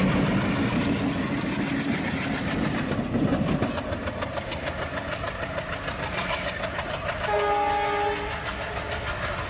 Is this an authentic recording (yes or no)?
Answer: yes